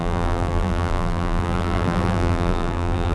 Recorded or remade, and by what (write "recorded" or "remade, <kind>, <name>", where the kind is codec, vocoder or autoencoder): remade, vocoder, BigVGAN v2